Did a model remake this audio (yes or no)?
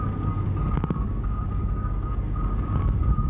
yes